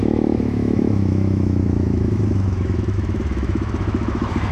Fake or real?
fake